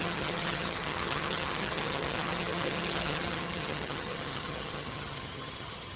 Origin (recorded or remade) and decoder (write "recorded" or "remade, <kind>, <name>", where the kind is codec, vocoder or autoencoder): remade, vocoder, HiFi-GAN